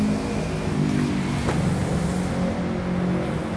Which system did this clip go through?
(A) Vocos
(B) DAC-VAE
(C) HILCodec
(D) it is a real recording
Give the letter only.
D